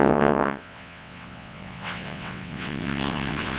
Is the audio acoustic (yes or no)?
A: no